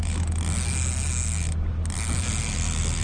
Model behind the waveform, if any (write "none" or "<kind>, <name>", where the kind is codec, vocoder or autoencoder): none